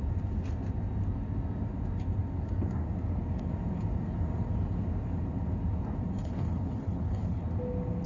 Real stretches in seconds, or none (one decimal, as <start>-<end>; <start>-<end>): 0.0-6.2; 7.4-8.1